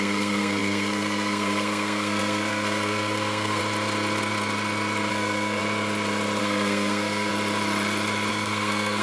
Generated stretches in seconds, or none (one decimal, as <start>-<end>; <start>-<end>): 0.0-3.6; 5.1-5.6; 6.4-7.3; 8.3-9.0